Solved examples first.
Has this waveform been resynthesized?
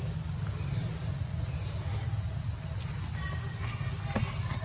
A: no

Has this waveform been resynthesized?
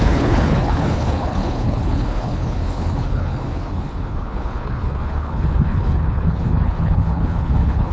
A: yes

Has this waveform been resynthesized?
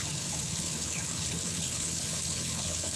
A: yes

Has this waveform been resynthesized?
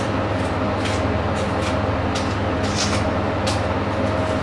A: no